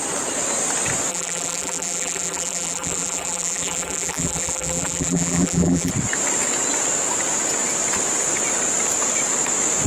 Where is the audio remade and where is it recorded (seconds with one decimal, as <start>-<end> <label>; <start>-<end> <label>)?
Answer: 0.0-1.1 recorded; 1.1-5.9 remade; 5.9-9.9 recorded